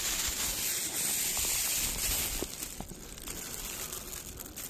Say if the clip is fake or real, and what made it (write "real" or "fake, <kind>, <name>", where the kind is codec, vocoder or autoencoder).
real